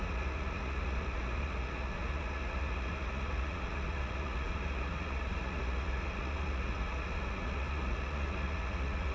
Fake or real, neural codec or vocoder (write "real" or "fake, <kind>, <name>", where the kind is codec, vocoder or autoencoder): fake, vocoder, Vocos